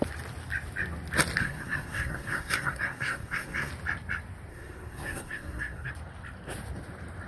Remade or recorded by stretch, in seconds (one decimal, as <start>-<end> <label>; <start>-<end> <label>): 0.0-1.4 recorded; 1.4-3.7 remade; 3.7-4.5 recorded; 4.5-5.9 remade; 5.9-7.3 recorded